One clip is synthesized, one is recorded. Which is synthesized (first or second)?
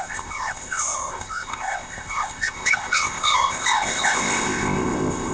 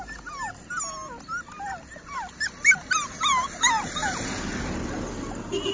first